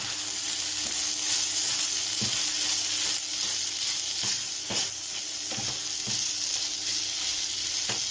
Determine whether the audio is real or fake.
real